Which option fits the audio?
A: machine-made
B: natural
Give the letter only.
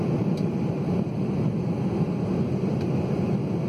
B